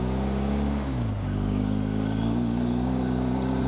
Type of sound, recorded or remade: remade